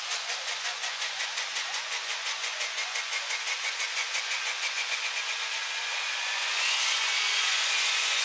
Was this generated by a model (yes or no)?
yes